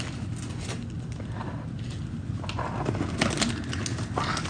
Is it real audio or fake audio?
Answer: real